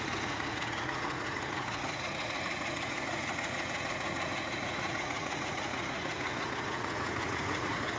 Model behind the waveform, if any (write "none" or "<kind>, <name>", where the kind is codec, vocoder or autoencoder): vocoder, Vocos